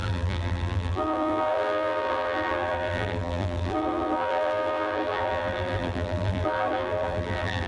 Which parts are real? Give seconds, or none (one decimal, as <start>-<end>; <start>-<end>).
none